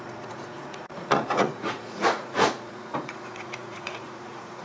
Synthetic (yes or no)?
yes